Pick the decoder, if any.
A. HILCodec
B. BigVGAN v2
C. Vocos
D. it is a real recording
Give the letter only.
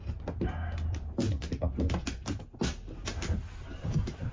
D